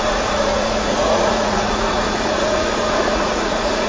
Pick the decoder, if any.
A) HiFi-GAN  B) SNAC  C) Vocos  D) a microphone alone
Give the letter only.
C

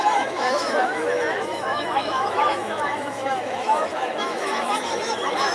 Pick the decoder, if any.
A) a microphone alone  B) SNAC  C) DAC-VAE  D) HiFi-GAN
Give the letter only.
C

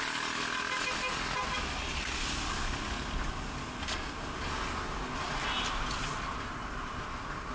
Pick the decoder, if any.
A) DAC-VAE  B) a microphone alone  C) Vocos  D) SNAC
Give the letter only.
B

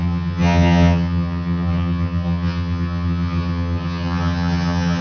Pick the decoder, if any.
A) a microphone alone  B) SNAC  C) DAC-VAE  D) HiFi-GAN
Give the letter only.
D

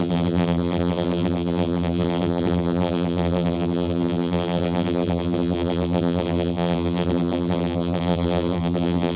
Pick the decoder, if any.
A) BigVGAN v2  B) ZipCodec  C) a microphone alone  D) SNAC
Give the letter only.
A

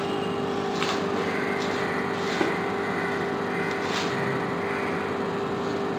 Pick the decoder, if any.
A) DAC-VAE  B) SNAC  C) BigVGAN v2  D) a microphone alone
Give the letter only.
D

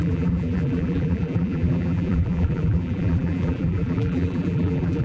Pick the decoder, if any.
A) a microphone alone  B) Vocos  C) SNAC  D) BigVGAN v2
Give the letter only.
D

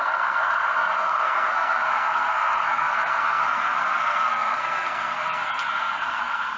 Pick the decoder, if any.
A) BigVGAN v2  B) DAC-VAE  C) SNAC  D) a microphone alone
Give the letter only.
C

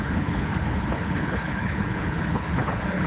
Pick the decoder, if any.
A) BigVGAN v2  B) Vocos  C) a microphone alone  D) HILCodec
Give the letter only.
D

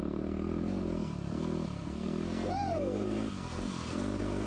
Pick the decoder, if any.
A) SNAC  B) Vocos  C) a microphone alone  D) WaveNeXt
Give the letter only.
A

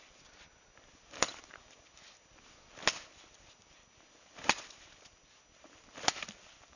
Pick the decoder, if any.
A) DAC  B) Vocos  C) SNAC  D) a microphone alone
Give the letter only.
D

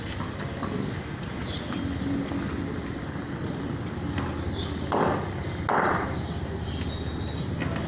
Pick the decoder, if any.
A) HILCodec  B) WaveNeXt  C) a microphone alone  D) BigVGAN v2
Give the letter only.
C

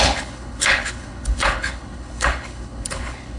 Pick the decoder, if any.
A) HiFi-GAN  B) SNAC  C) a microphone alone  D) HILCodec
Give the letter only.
D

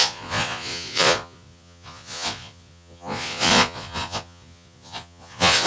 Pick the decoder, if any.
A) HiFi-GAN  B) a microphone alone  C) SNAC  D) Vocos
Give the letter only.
D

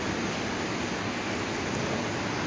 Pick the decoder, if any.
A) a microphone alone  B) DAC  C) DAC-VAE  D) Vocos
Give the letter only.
A